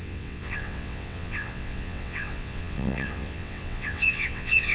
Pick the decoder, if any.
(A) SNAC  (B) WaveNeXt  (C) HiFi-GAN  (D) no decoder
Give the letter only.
B